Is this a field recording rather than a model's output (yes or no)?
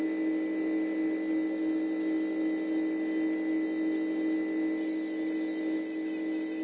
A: yes